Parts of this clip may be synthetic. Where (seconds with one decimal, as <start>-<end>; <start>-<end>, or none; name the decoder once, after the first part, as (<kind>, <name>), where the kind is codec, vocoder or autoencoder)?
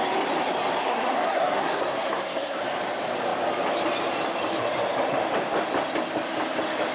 0.8-2.6 (codec, SNAC)